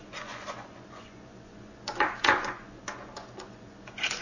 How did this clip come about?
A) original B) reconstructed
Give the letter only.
B